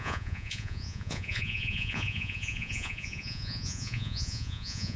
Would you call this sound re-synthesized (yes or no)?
yes